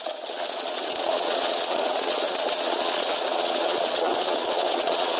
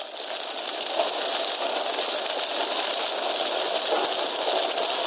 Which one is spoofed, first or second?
first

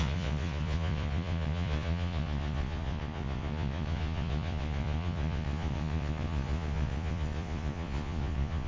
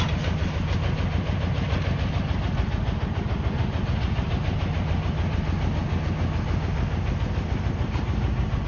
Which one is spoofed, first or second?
first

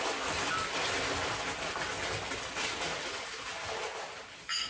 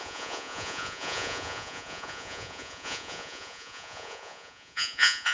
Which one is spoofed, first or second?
second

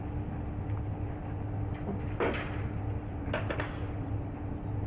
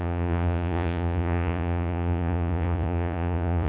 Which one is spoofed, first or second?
second